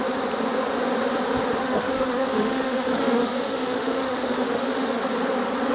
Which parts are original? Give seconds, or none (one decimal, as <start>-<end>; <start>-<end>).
0.0-1.6; 5.0-5.7